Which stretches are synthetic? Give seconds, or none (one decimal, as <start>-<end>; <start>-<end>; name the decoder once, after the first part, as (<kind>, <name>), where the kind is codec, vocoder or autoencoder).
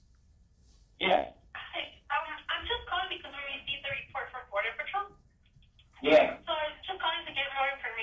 0.6-2.2 (vocoder, Vocos)